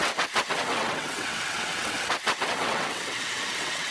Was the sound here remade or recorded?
remade